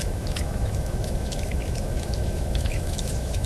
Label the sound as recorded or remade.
remade